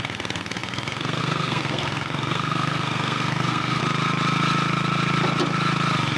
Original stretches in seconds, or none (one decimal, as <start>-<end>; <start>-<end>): 3.8-6.2